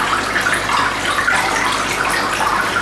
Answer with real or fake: real